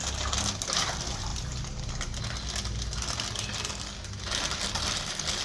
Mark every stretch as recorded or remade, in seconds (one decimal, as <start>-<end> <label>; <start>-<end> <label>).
0.0-5.4 recorded